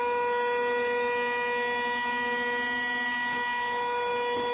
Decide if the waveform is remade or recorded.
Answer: recorded